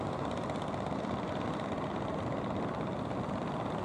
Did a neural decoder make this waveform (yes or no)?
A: no